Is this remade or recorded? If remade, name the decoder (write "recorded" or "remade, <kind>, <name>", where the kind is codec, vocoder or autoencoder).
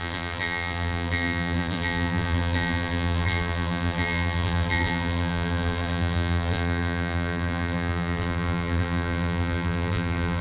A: remade, vocoder, BigVGAN v2